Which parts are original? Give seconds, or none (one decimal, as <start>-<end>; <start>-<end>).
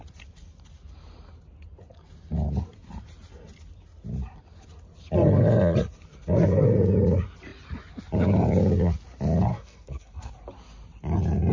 0.0-9.5; 10.3-11.5